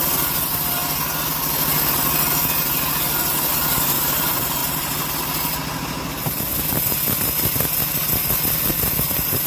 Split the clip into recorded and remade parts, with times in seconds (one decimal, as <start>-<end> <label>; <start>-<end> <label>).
0.0-0.8 remade; 0.8-3.5 recorded; 3.5-4.6 remade; 4.6-8.9 recorded; 8.9-9.5 remade